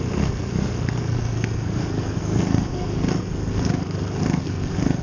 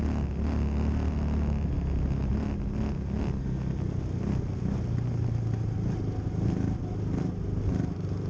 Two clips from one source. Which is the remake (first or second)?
first